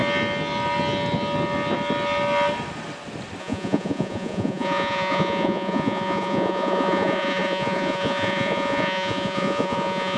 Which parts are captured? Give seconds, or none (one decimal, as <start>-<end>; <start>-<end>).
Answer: 0.0-3.4